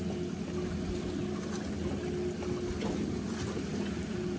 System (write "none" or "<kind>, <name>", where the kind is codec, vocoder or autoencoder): none